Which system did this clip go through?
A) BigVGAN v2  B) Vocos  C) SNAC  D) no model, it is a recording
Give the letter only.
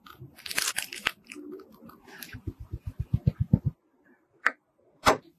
A